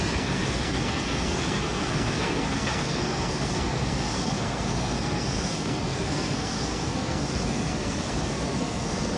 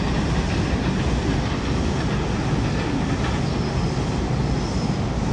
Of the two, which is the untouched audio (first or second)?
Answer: second